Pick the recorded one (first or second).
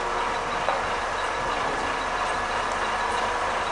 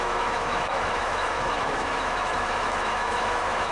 first